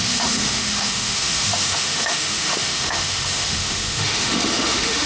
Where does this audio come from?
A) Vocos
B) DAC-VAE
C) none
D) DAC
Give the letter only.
B